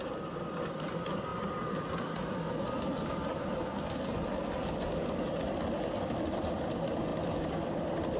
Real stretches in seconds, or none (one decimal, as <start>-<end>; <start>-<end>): 0.0-8.2